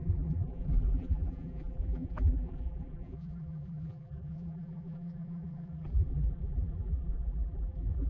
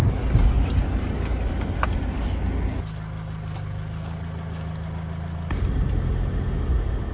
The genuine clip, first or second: second